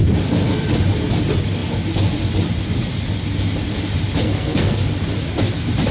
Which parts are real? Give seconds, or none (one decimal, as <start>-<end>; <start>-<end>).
0.0-4.2; 4.8-5.9